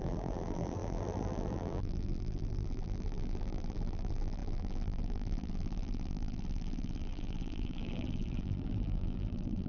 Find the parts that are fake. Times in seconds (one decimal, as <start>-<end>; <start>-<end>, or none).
0.0-9.7